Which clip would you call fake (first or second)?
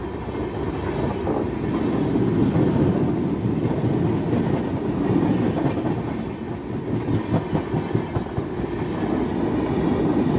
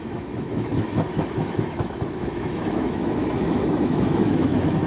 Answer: second